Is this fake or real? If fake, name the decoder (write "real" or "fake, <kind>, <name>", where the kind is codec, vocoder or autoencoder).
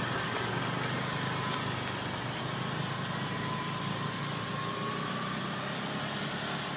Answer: real